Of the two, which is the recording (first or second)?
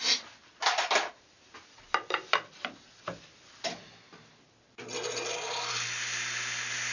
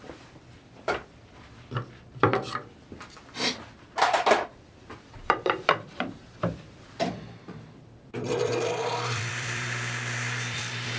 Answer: first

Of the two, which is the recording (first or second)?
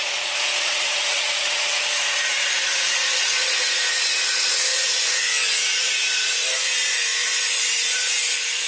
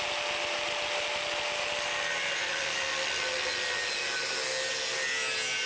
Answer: second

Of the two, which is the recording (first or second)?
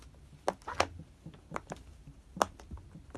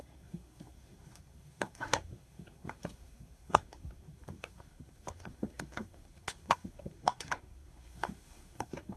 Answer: first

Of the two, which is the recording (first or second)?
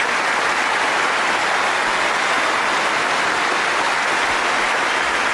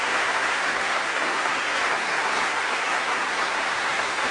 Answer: first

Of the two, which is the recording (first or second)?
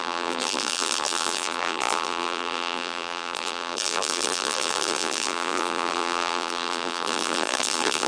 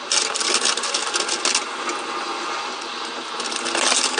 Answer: second